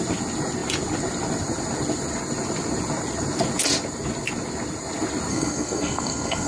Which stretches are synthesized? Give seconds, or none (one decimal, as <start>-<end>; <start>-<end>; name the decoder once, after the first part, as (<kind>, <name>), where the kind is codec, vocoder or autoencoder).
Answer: 5.3-6.5 (codec, SNAC)